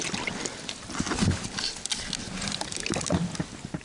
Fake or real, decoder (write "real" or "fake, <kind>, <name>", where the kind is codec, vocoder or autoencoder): real